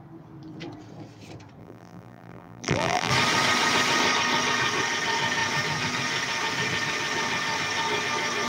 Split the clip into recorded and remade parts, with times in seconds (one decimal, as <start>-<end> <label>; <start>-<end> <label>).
0.0-1.6 recorded; 1.6-3.1 remade; 3.1-8.5 recorded